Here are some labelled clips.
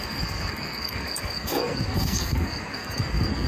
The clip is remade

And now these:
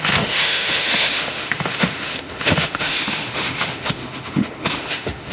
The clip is remade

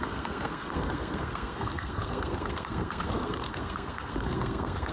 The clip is remade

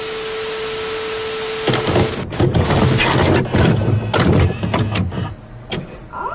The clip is recorded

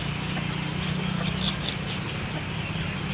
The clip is recorded